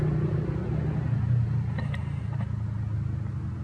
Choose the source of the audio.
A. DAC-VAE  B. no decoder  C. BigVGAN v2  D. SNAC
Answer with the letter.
B